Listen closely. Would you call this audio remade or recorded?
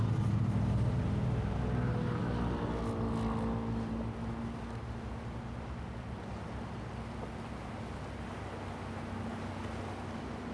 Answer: recorded